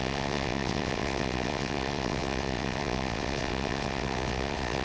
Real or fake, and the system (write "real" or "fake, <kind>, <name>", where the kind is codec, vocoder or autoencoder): fake, vocoder, WaveNeXt